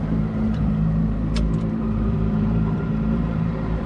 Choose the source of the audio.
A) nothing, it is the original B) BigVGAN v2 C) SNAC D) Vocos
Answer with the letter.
B